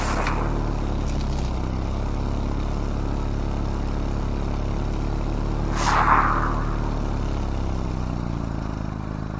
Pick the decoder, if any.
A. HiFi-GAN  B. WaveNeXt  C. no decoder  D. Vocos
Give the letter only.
C